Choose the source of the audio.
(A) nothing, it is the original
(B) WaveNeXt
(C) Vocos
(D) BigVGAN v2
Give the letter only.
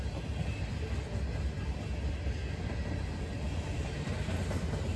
A